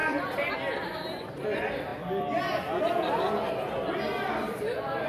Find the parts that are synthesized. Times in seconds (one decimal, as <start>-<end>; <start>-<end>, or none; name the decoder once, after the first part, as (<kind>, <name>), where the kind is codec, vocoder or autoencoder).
0.0-0.5 (vocoder, BigVGAN v2)